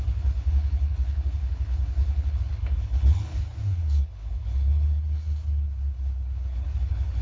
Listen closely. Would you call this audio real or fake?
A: fake